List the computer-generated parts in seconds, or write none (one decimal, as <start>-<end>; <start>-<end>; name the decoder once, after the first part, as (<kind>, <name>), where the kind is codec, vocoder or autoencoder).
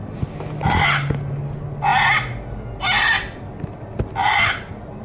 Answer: none